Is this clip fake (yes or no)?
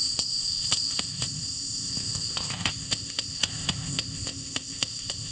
yes